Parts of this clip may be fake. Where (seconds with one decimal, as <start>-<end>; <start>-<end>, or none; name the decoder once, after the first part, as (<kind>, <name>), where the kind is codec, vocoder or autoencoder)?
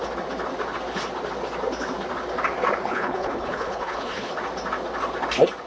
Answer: 2.9-4.3 (codec, HILCodec)